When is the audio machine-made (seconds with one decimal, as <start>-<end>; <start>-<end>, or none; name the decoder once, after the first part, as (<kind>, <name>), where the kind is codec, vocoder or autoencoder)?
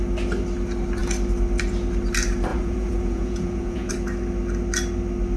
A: 2.5-3.9 (vocoder, Vocos)